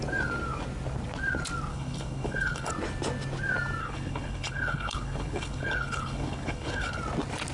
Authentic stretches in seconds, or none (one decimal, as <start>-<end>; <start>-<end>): 0.0-1.7; 2.7-3.8; 7.0-7.5